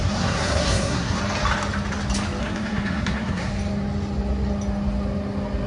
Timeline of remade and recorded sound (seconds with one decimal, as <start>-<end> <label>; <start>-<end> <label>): 0.0-1.2 remade; 1.2-2.4 recorded; 2.4-3.5 remade; 3.5-5.7 recorded